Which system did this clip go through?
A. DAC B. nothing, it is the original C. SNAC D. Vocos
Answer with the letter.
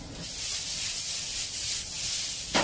B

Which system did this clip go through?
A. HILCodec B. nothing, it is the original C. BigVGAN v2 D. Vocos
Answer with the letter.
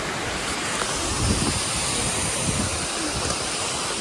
B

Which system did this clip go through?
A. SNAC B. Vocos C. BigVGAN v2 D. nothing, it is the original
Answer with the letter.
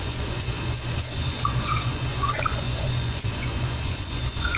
B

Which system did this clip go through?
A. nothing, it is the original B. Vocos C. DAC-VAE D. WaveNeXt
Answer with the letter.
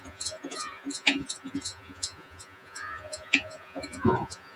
B